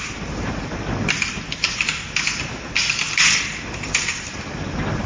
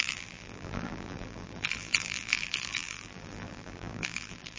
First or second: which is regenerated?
second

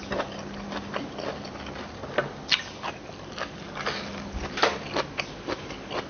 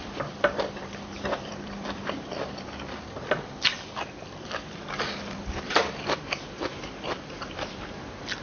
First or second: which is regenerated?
second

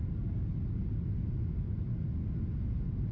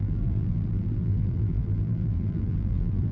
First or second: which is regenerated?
second